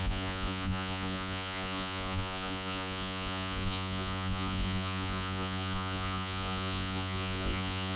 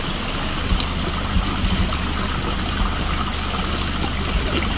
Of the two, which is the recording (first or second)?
second